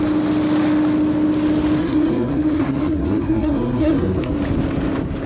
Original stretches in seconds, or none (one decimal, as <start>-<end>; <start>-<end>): 0.0-1.8; 4.3-5.3

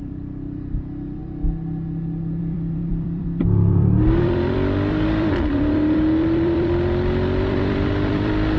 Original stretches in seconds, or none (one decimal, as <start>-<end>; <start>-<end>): 1.2-2.4

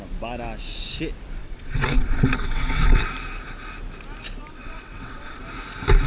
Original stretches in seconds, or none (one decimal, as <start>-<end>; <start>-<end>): 0.0-1.4; 3.0-4.5; 5.4-6.1

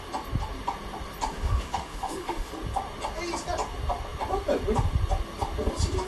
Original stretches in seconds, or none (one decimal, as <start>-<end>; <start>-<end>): 0.0-1.3; 2.5-6.1

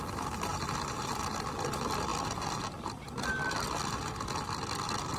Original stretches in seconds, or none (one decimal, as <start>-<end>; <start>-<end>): 0.0-5.2

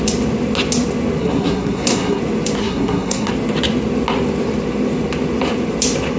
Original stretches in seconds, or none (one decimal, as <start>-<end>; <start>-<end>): 0.0-1.2; 2.2-2.6; 3.3-6.2

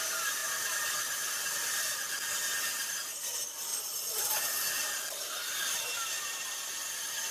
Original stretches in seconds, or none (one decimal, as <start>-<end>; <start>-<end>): 0.0-0.4; 2.9-3.7; 5.8-7.3